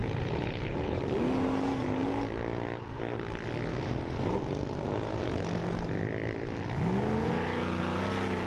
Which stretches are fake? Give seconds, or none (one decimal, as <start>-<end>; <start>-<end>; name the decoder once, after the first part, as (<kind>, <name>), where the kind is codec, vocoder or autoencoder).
0.0-1.0 (vocoder, Vocos)